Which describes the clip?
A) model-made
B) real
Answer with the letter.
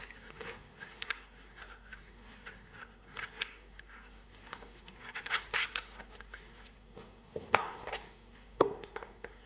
A